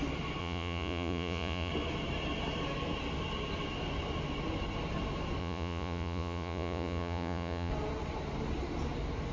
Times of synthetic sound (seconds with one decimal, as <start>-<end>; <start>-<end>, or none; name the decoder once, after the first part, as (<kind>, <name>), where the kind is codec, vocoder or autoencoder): 0.4-1.7 (vocoder, Vocos); 5.4-7.7